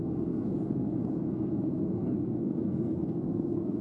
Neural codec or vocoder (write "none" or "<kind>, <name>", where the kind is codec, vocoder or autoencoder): codec, SNAC